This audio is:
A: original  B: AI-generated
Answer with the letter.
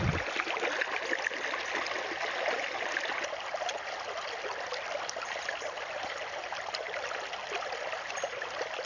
A